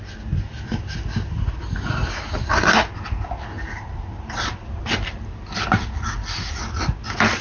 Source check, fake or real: real